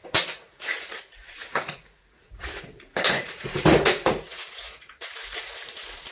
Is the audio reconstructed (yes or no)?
yes